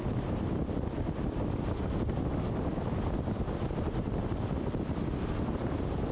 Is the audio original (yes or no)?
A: yes